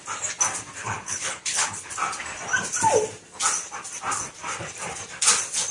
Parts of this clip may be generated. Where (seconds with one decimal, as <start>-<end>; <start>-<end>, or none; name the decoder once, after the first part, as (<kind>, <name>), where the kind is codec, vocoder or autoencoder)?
0.8-1.9 (codec, HILCodec)

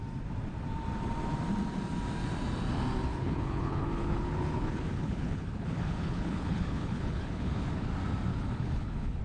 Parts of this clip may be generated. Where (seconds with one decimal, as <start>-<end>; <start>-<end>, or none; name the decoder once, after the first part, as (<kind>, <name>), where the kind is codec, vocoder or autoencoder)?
3.1-7.9 (codec, HILCodec); 8.3-9.2

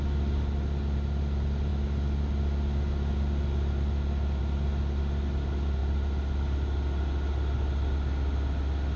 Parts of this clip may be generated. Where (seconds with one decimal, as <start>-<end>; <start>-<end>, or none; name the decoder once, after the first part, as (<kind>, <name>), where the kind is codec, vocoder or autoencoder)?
none

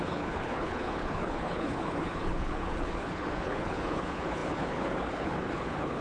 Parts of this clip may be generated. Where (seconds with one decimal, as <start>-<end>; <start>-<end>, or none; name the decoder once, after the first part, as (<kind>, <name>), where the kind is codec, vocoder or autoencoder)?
0.0-6.0 (codec, HILCodec)

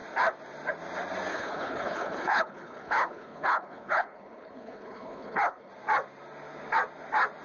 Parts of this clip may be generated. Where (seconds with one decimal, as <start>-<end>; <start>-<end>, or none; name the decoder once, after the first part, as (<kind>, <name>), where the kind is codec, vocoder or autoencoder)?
1.3-5.7 (codec, HILCodec)